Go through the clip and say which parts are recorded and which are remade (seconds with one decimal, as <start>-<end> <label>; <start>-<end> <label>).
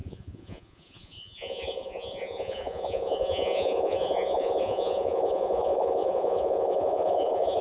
0.0-7.6 remade